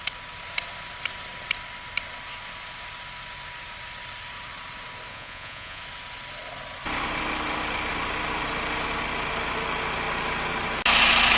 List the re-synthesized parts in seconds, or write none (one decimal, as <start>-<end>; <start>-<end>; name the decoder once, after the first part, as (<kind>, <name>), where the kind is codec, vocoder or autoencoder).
5.1-5.8 (vocoder, Vocos)